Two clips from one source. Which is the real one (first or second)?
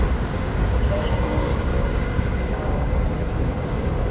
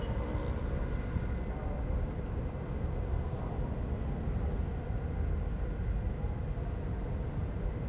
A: second